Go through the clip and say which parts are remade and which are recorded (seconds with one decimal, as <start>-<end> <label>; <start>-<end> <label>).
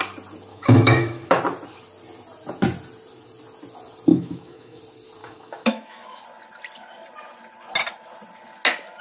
0.0-0.5 recorded; 0.5-1.4 remade; 1.4-4.1 recorded; 4.1-4.8 remade; 4.8-5.2 recorded; 5.2-6.2 remade; 6.2-9.0 recorded